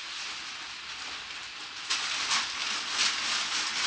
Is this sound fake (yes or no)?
no